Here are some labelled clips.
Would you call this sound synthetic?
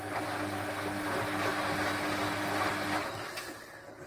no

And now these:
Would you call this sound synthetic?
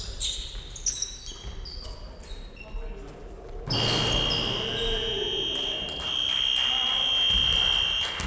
no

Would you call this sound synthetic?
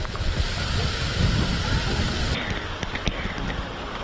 no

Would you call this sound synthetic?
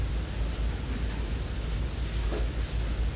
no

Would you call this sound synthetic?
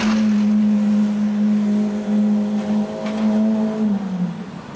no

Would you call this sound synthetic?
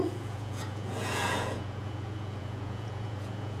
yes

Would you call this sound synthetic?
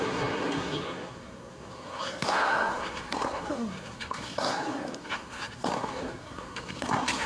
yes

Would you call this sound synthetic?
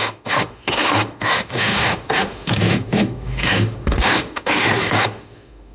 yes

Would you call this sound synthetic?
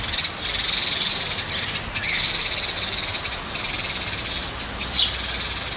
no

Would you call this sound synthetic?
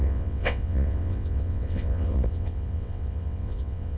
yes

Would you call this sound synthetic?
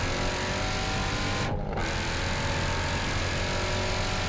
no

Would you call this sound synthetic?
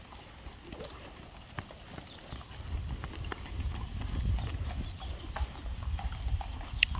no